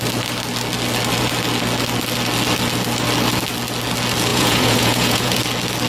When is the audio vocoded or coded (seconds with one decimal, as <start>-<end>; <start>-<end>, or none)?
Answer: 4.3-5.4